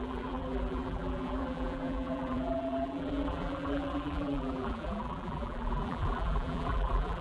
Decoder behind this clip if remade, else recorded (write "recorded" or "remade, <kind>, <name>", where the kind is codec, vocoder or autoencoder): remade, vocoder, BigVGAN v2